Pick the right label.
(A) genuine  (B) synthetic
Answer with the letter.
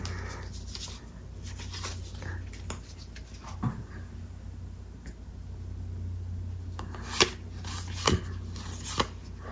A